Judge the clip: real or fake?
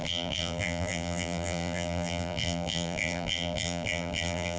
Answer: fake